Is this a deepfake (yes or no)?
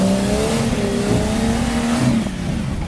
no